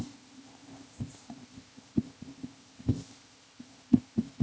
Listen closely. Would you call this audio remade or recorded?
remade